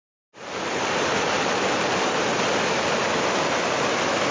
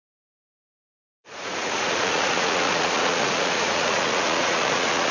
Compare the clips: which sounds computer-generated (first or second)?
second